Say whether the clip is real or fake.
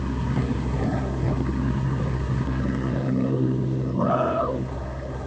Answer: fake